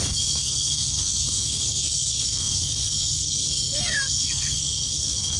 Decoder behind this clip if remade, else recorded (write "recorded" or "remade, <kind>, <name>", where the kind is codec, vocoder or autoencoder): remade, codec, SNAC